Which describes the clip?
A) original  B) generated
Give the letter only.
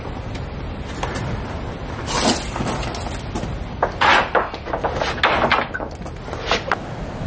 A